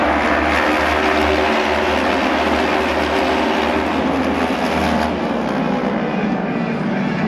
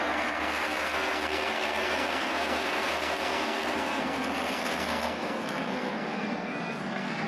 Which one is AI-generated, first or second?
second